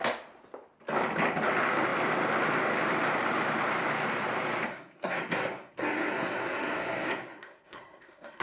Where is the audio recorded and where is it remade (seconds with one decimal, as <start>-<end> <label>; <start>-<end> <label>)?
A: 0.0-4.7 recorded; 4.7-8.4 remade